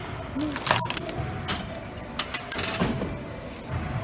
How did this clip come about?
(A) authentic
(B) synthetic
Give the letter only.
A